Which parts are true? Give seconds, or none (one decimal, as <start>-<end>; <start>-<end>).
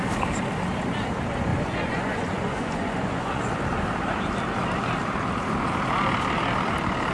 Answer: 0.0-1.5; 3.6-7.1